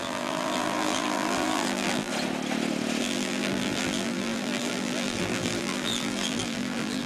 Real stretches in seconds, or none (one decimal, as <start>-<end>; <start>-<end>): 2.1-3.0